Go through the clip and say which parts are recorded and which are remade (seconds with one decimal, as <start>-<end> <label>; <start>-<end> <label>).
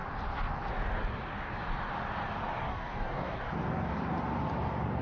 0.0-2.6 recorded; 2.6-3.4 remade; 3.4-5.0 recorded